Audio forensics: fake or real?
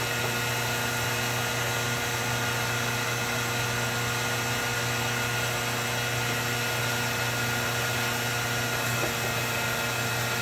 real